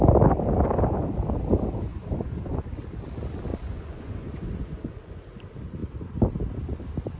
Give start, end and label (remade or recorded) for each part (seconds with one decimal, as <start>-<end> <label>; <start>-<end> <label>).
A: 0.0-1.9 recorded; 1.9-2.6 remade; 2.6-3.5 recorded; 3.5-5.2 remade; 5.2-7.2 recorded